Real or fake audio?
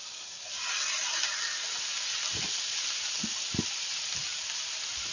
real